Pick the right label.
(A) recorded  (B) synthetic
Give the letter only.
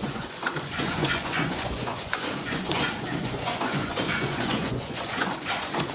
B